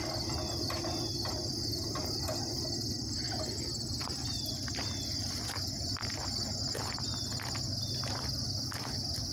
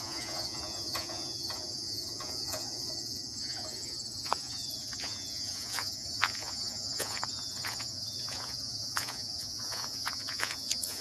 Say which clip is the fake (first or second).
second